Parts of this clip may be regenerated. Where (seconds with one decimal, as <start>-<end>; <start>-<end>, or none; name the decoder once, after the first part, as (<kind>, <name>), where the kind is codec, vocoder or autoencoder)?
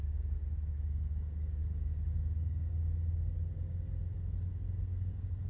0.0-1.6 (codec, SNAC); 2.1-2.7; 4.8-5.5